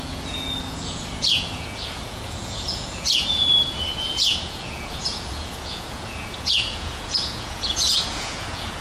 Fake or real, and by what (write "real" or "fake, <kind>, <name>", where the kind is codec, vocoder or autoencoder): fake, vocoder, Vocos